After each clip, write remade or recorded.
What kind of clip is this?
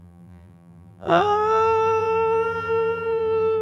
remade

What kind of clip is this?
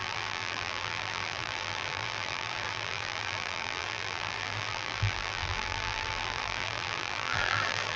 remade